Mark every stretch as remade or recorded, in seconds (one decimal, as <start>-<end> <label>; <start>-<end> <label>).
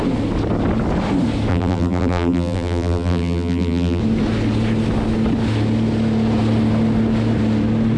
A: 0.0-1.5 recorded; 1.5-4.0 remade; 4.0-8.0 recorded